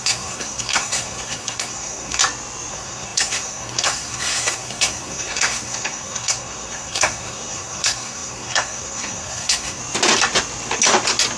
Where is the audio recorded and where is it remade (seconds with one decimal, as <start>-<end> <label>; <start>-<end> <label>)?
0.0-2.2 remade; 2.2-2.7 recorded; 2.7-9.8 remade; 9.8-11.4 recorded

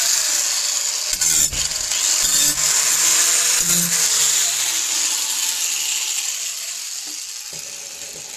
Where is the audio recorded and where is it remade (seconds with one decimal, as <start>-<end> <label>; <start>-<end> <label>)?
0.0-8.4 recorded

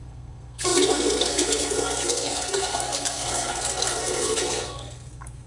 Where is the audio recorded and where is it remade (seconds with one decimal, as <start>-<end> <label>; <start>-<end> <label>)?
0.0-5.5 remade

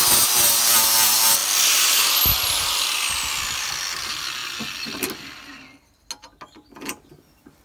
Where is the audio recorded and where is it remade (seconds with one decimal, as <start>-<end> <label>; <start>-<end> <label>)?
0.0-7.6 recorded

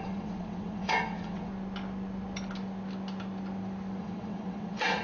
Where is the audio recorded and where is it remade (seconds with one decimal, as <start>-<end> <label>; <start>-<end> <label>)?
0.0-1.5 remade; 1.5-4.0 recorded; 4.0-5.0 remade

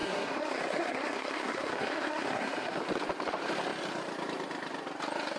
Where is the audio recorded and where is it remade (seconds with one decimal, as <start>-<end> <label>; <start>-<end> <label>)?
0.0-2.8 remade; 2.8-5.4 recorded

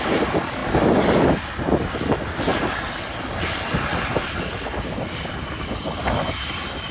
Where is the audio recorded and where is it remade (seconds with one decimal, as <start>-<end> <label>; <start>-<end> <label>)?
0.0-6.9 recorded

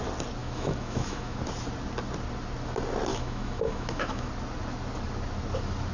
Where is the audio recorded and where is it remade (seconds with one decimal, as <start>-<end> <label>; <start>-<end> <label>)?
0.0-0.4 recorded; 0.4-1.4 remade; 1.4-3.1 recorded; 3.1-4.3 remade; 4.3-5.9 recorded